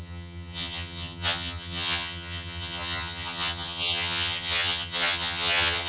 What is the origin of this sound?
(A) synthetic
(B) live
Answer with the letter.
A